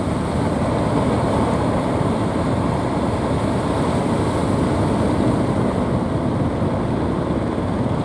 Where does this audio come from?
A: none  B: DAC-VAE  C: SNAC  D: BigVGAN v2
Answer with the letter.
A